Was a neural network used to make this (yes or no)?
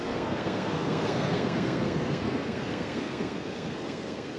yes